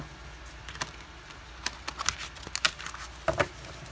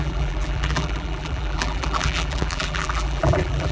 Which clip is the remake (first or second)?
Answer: second